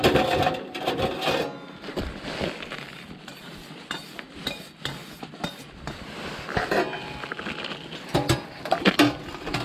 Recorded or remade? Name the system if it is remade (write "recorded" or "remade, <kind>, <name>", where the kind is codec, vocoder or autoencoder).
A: recorded